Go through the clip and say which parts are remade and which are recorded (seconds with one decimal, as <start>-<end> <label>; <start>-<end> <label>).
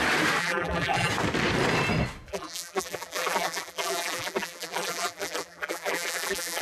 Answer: 0.0-0.4 recorded; 0.4-1.1 remade; 1.1-2.3 recorded; 2.3-6.6 remade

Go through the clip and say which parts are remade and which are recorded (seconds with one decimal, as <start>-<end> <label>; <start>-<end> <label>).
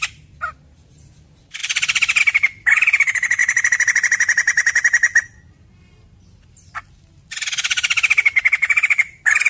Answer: 0.0-3.4 remade; 3.4-8.5 recorded; 8.5-9.5 remade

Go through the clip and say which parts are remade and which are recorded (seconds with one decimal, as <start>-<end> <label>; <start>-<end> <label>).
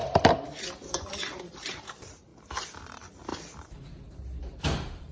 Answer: 0.0-1.1 recorded; 1.1-2.3 remade; 2.3-2.8 recorded; 2.8-3.3 remade; 3.3-4.4 recorded; 4.4-5.1 remade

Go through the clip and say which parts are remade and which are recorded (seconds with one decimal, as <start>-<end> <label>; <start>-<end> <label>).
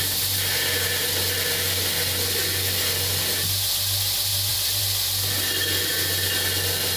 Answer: 0.0-4.3 recorded; 4.3-4.8 remade; 4.8-7.0 recorded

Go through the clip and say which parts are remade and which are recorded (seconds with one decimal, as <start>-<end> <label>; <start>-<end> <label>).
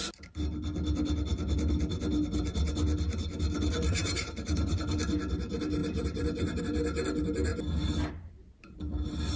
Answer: 0.0-4.0 recorded; 4.0-5.0 remade; 5.0-5.8 recorded; 5.8-6.6 remade; 6.6-9.4 recorded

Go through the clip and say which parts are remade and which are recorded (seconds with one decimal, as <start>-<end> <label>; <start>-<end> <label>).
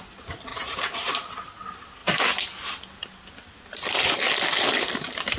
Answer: 0.0-0.5 recorded; 0.5-1.4 remade; 1.4-2.0 recorded; 2.0-4.8 remade; 4.8-5.4 recorded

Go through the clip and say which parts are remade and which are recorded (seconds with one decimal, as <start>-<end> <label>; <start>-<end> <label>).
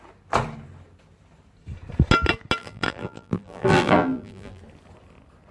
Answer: 0.0-2.6 recorded; 2.6-4.6 remade; 4.6-5.5 recorded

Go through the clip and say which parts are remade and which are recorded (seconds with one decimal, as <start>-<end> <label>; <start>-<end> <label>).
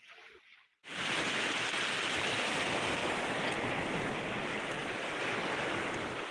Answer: 0.0-3.0 recorded; 3.0-3.7 remade; 3.7-4.8 recorded; 4.8-5.3 remade; 5.3-6.3 recorded